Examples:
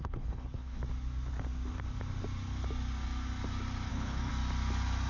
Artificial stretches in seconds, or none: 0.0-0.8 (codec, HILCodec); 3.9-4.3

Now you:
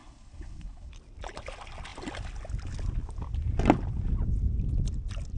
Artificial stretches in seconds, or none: 0.0-0.9 (codec, HILCodec)

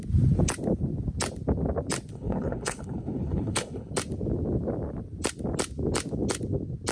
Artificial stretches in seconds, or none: 2.1-3.9 (codec, HILCodec)

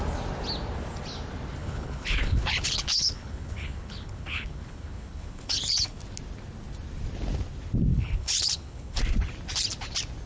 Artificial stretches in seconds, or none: 1.6-6.0 (codec, HILCodec); 7.9-9.0

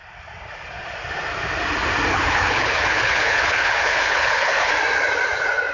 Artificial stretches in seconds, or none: 2.1-4.7 (codec, HILCodec)

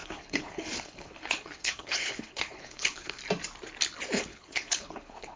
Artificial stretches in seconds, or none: 0.0-3.2 (codec, HILCodec); 4.3-5.4

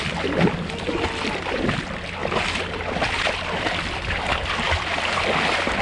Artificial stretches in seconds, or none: none